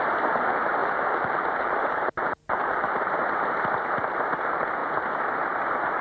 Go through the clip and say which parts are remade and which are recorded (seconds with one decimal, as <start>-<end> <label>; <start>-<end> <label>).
0.0-0.8 recorded; 0.8-3.1 remade; 3.1-6.0 recorded